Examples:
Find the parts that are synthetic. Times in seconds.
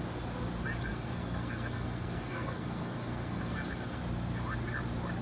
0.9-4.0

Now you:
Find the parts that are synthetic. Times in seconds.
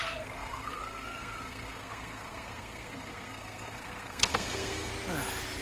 0.0-4.9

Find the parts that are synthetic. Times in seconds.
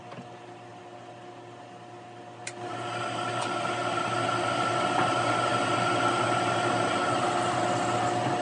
none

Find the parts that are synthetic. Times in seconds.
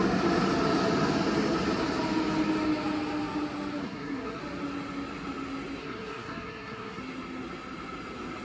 3.8-4.4; 5.8-7.0